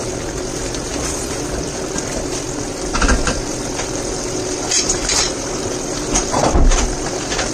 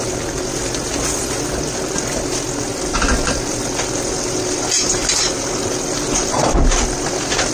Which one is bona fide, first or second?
second